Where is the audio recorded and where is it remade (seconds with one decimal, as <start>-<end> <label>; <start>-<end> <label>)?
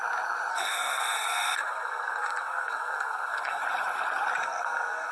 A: 0.0-0.5 recorded; 0.5-3.6 remade; 3.6-4.4 recorded; 4.4-5.1 remade